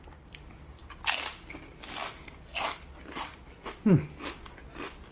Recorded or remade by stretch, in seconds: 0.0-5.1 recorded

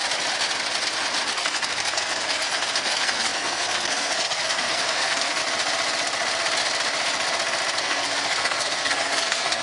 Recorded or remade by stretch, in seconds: 0.0-1.3 recorded; 1.3-5.4 remade; 5.4-7.8 recorded; 7.8-9.6 remade

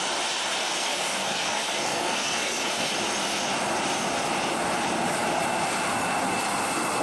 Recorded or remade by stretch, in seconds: 0.0-0.6 recorded; 0.6-2.9 remade; 2.9-7.0 recorded

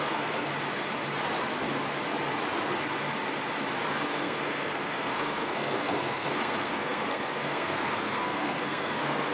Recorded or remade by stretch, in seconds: 0.0-0.5 remade; 0.5-3.9 recorded; 3.9-9.3 remade

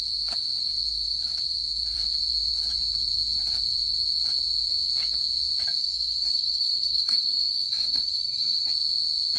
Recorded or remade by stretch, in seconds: 0.0-5.8 recorded; 5.8-8.7 remade; 8.7-9.4 recorded

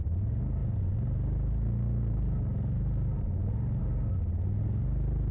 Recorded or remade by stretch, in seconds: 0.0-5.3 recorded